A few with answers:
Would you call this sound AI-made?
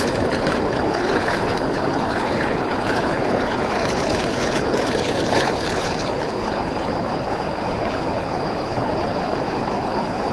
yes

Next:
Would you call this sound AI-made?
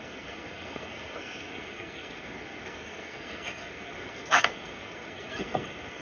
yes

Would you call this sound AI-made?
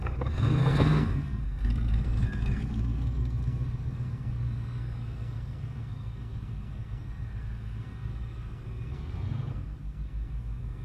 yes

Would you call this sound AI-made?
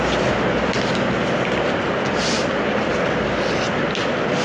no